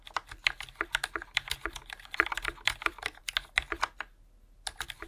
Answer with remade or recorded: recorded